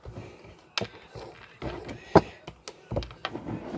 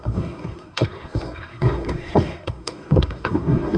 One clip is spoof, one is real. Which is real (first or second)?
first